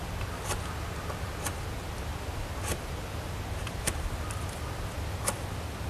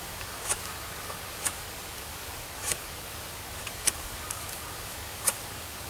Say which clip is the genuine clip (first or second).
first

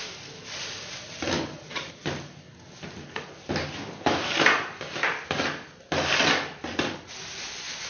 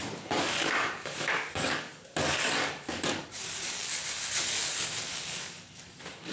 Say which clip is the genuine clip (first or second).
first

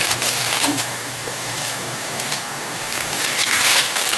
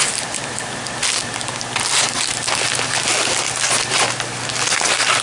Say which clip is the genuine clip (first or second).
second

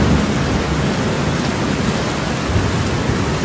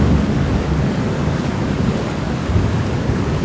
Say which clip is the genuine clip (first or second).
first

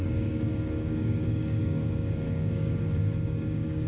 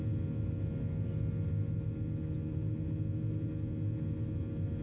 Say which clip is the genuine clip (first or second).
second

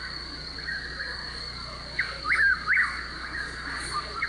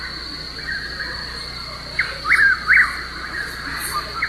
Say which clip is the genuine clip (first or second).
second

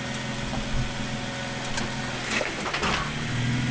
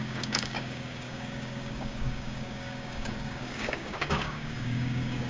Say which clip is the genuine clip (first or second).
first